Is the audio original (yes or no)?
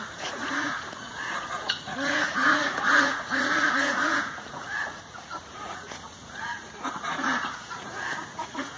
no